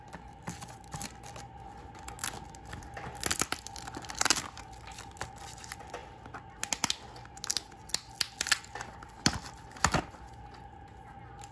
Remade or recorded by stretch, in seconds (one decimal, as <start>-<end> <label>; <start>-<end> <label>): 0.0-11.5 recorded